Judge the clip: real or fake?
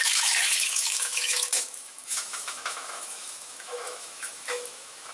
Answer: fake